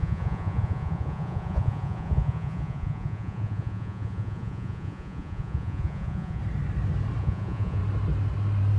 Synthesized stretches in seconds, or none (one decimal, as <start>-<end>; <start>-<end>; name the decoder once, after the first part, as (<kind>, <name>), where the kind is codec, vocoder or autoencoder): 0.0-6.4 (vocoder, Vocos); 7.2-7.8